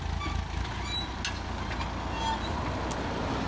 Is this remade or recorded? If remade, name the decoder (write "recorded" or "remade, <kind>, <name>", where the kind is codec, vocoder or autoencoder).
recorded